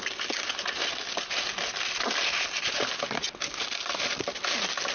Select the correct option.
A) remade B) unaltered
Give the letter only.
B